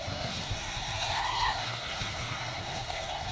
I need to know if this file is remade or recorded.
remade